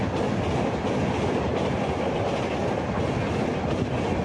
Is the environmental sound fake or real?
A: real